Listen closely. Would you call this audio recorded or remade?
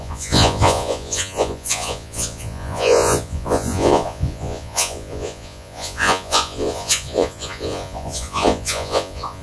remade